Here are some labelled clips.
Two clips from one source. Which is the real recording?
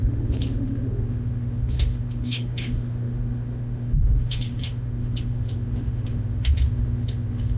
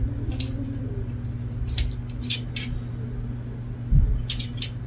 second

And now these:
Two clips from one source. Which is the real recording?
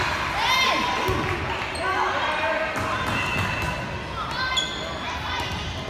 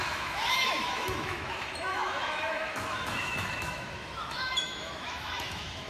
first